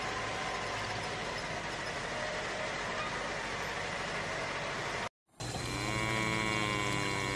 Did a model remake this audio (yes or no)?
no